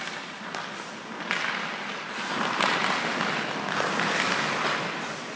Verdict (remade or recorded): recorded